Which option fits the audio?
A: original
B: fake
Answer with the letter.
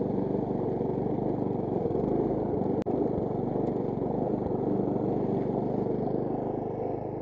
A